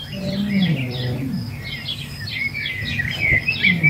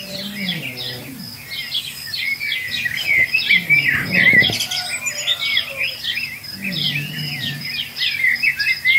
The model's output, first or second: first